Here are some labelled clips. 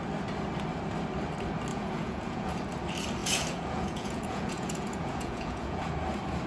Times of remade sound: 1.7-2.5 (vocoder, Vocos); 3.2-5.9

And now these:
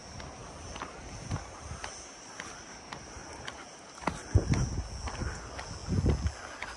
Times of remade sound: none

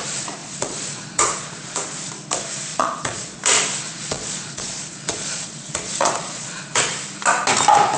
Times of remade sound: 0.4-2.1 (vocoder, Vocos); 2.7-3.4; 3.9-6.9

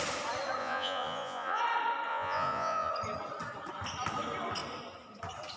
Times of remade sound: 0.6-1.6 (vocoder, Vocos); 2.1-2.9

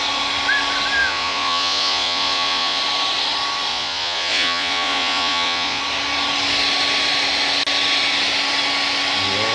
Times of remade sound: 1.0-2.8 (vocoder, Vocos); 3.7-5.8

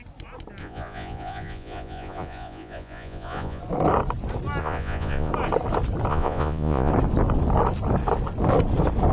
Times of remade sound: 0.6-3.6 (vocoder, Vocos); 4.6-5.3; 6.1-6.9

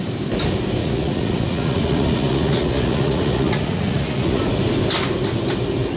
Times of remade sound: 0.8-4.4 (vocoder, Vocos)

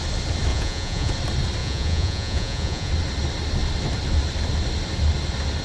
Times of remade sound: 0.5-1.1 (vocoder, Vocos); 1.6-2.9